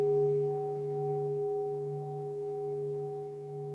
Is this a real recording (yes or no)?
no